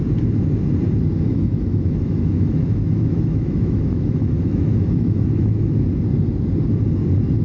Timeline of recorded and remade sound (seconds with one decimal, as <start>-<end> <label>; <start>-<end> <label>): 0.0-1.3 recorded; 1.3-5.7 remade; 5.7-7.4 recorded